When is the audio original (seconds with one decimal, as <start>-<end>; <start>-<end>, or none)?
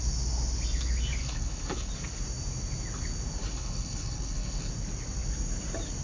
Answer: 0.0-1.2; 1.9-3.4; 4.7-6.0